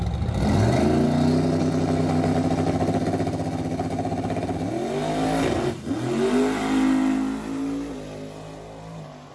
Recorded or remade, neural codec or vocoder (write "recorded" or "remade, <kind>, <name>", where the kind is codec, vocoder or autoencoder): recorded